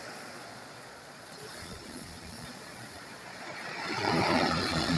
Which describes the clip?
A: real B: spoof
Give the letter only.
B